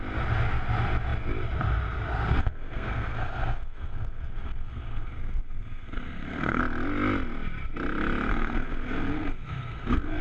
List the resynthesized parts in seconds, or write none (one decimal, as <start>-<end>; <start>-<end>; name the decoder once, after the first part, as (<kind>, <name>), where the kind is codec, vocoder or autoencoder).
2.4-6.6 (codec, SNAC); 8.3-10.2